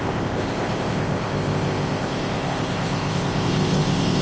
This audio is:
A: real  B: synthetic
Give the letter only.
B